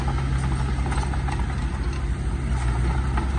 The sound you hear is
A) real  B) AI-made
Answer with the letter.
A